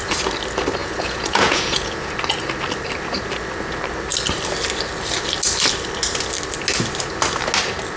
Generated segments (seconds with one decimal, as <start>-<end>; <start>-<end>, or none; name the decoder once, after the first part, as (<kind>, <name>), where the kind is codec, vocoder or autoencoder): 0.8-2.1 (vocoder, Vocos)